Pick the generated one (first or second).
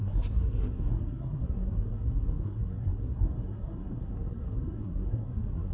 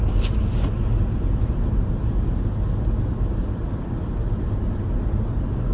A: first